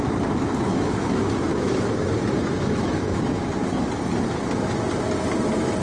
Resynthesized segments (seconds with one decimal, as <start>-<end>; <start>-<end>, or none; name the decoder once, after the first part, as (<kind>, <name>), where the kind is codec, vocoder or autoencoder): 0.7-3.5 (autoencoder, DAC-VAE)